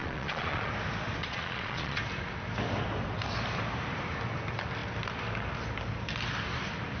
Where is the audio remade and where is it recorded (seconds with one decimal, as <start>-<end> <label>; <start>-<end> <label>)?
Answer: 0.0-0.7 remade; 0.7-1.2 recorded; 1.2-2.0 remade; 2.0-7.0 recorded